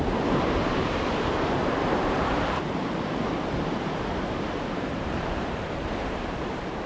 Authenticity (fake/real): fake